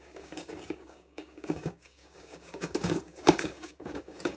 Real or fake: fake